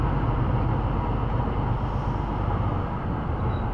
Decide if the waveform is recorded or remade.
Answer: recorded